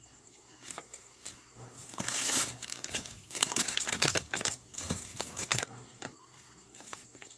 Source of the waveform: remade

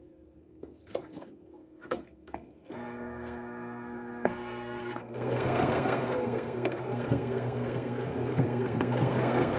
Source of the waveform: remade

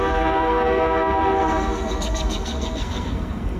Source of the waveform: remade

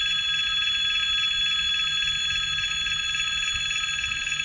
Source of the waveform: recorded